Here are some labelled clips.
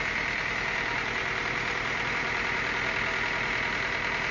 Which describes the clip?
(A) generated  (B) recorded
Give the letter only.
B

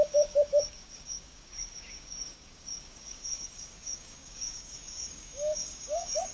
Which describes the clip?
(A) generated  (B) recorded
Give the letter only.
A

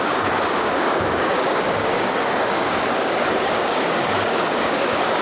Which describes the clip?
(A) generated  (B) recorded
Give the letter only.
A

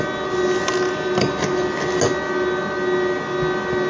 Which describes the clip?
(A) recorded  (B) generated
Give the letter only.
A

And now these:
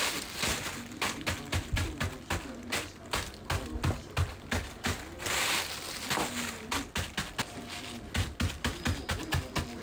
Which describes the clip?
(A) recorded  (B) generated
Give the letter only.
A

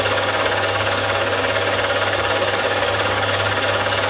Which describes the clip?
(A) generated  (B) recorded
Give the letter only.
A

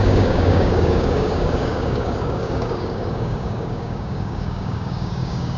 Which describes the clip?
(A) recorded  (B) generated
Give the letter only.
B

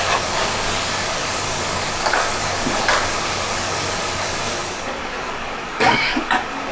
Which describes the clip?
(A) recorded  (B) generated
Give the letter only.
B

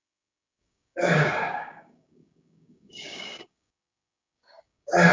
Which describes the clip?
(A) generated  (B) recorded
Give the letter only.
A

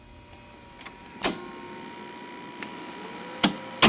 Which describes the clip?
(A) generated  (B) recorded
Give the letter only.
B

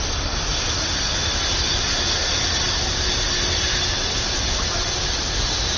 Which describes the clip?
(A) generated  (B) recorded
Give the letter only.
B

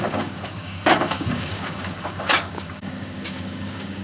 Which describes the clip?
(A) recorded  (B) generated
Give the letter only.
B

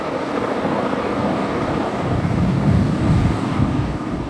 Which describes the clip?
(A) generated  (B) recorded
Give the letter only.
A